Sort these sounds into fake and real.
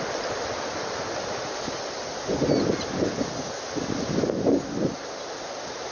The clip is real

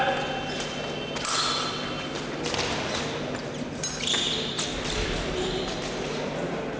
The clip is real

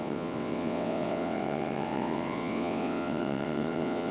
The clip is fake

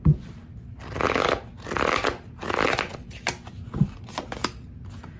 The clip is real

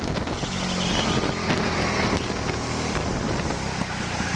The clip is real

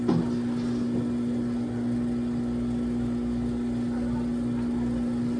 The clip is real